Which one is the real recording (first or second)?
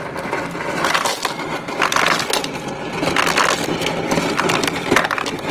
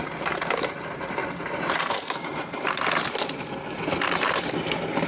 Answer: first